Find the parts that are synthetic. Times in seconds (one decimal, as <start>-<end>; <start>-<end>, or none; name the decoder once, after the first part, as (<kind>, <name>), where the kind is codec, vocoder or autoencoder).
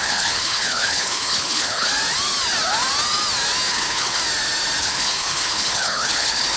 0.0-1.9 (codec, HILCodec); 3.7-4.2; 4.8-6.6